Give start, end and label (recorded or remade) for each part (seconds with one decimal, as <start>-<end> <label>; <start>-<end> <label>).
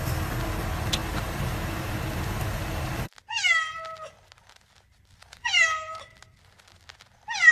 0.0-1.0 recorded; 1.0-3.1 remade; 3.1-5.2 recorded; 5.2-6.0 remade; 6.0-7.5 recorded